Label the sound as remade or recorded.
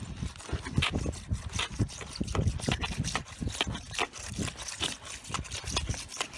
recorded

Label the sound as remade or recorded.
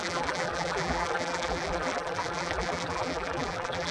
remade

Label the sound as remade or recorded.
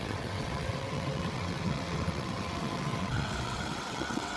remade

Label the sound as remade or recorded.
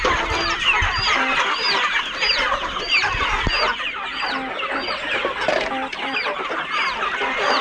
recorded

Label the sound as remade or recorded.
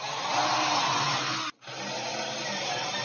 recorded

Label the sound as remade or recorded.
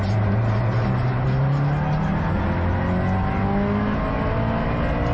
recorded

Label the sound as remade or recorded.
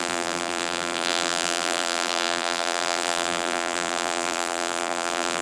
remade